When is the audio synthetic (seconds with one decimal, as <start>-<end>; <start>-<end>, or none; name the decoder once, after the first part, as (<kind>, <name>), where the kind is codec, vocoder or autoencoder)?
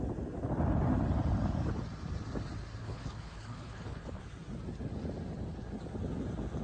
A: 2.8-4.2 (codec, HILCodec)